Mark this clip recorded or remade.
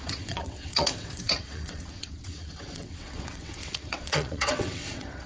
remade